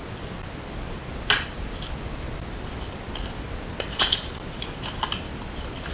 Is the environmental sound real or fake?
real